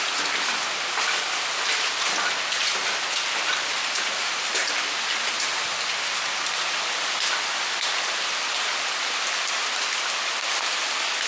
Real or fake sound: real